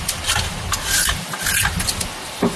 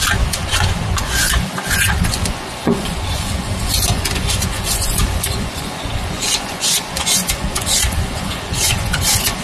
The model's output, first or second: second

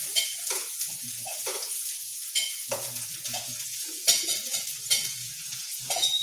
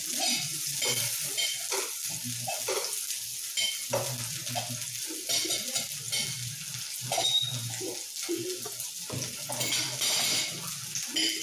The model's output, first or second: first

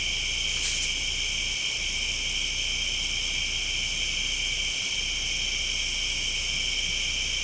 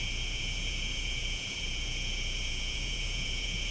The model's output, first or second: second